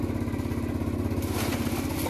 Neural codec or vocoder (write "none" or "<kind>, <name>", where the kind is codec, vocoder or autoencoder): none